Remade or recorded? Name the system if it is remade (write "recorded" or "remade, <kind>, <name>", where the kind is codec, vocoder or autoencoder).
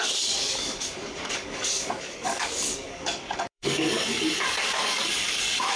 remade, codec, DAC